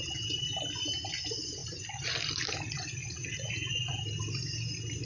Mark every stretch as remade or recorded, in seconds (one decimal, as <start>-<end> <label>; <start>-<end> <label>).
0.0-3.0 recorded; 3.0-4.0 remade; 4.0-5.1 recorded